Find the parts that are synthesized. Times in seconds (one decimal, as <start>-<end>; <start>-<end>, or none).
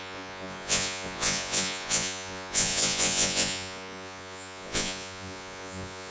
0.0-6.1